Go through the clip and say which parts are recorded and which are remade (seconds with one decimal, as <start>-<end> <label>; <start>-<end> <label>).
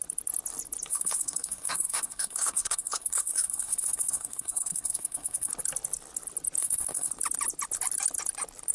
0.0-0.9 recorded; 0.9-5.5 remade; 5.5-6.6 recorded; 6.6-7.1 remade; 7.1-8.7 recorded